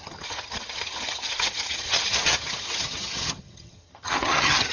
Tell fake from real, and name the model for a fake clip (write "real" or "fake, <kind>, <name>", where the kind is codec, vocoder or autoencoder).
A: fake, vocoder, HiFi-GAN